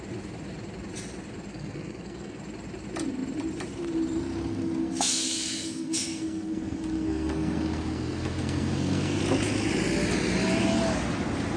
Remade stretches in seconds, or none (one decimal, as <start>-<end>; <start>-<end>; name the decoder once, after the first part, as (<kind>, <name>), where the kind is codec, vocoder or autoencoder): 1.5-2.4 (codec, SNAC); 4.8-9.2